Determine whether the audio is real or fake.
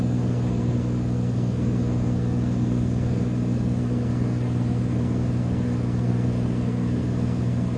fake